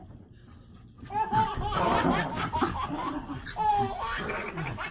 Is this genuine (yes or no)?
yes